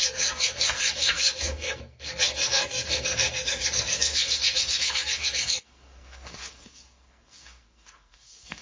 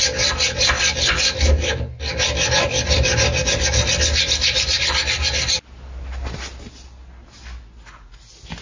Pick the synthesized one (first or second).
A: first